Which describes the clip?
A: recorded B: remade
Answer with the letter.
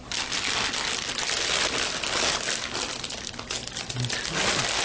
A